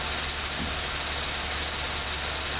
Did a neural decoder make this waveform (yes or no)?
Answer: no